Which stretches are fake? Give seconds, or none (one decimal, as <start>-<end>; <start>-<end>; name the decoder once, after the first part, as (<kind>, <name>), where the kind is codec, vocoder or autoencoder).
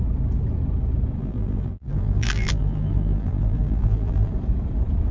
1.2-4.3 (vocoder, BigVGAN v2)